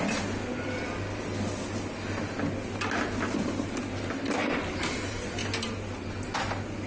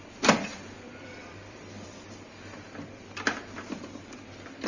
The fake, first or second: second